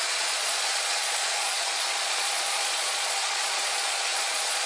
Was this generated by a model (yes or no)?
yes